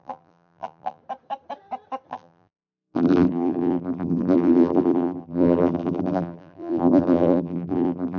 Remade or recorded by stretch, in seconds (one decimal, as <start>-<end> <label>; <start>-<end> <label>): 0.0-1.0 remade; 1.0-2.1 recorded; 2.1-8.2 remade